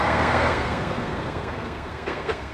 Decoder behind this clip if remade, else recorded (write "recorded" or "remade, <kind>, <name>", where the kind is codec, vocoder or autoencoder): remade, codec, SNAC